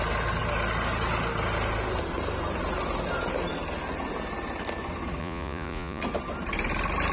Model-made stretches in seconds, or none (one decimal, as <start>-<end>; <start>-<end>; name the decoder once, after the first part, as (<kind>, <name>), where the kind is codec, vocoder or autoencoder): 5.2-6.0 (vocoder, Vocos)